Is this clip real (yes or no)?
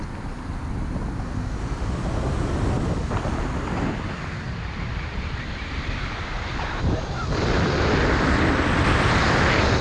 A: yes